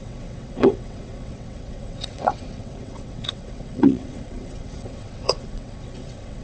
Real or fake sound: fake